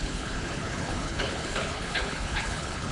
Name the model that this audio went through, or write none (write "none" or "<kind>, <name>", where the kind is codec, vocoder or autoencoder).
codec, HILCodec